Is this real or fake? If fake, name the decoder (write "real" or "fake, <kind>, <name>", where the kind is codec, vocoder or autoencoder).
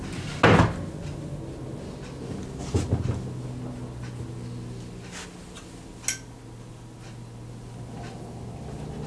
real